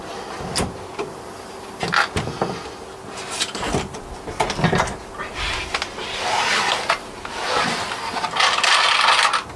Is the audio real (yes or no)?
yes